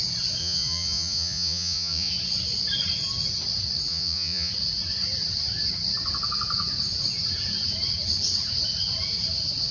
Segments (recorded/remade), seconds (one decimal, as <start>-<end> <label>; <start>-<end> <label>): 0.0-0.4 recorded; 0.4-2.1 remade; 2.1-3.9 recorded; 3.9-4.5 remade; 4.5-9.7 recorded